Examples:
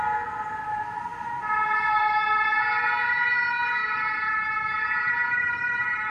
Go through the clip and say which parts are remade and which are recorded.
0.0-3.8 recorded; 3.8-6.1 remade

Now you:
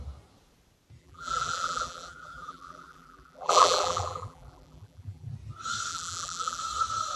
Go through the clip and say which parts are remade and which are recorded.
0.0-1.0 recorded; 1.0-5.3 remade; 5.3-5.9 recorded; 5.9-6.6 remade; 6.6-7.2 recorded

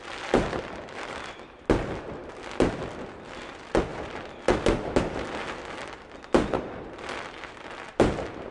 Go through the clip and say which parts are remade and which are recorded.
0.0-8.5 recorded

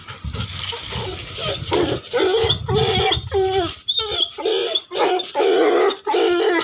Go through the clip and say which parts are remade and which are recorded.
0.0-4.0 recorded; 4.0-6.6 remade